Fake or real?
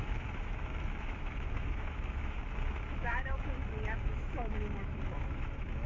fake